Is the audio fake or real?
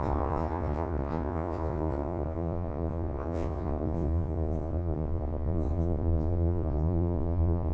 fake